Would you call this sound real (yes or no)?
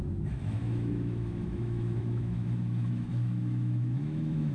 no